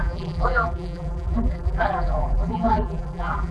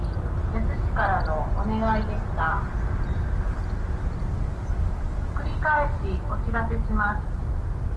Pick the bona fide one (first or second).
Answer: second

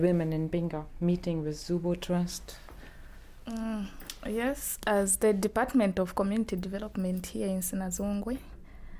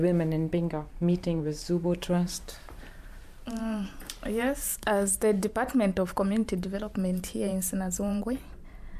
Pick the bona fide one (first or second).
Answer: first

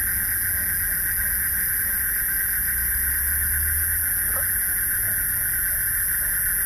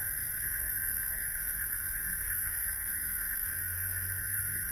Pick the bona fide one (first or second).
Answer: first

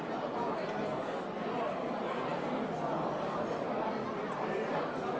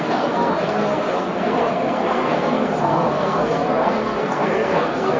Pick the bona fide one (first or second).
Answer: first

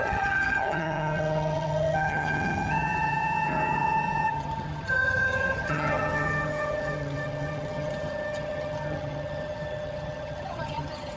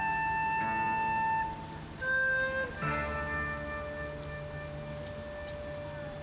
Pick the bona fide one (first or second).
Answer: second